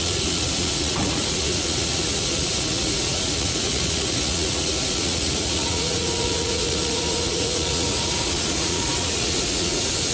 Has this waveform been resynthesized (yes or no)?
yes